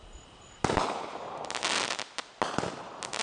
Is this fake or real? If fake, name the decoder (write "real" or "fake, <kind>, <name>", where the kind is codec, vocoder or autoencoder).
real